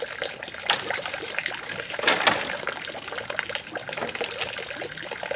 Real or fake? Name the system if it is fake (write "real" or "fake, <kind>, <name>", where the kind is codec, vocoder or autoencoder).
real